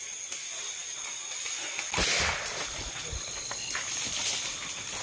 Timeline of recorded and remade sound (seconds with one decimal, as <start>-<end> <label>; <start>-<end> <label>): 0.0-5.0 recorded